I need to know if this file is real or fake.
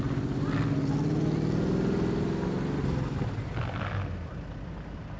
real